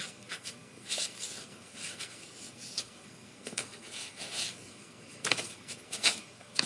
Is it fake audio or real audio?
fake